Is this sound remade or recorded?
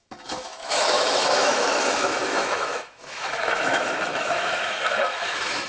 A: remade